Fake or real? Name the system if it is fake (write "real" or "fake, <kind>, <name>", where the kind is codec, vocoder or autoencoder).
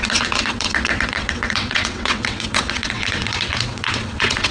fake, vocoder, WaveNeXt